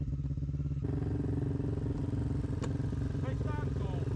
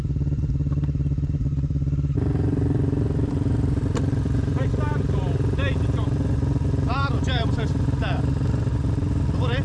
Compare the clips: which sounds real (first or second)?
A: first